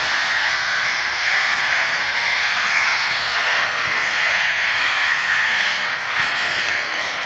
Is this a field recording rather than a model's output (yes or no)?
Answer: no